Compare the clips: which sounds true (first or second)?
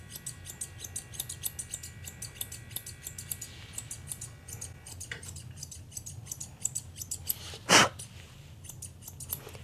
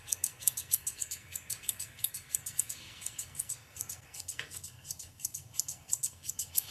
first